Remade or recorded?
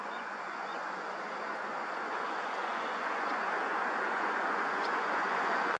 remade